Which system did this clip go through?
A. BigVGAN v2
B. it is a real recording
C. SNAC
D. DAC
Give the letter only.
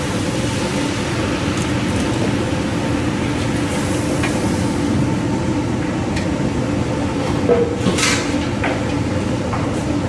B